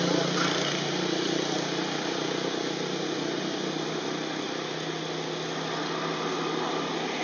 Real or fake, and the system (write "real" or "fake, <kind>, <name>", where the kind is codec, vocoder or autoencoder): real